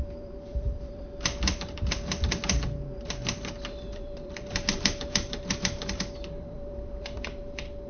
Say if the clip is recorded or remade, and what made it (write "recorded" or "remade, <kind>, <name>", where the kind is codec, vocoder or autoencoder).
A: remade, vocoder, BigVGAN v2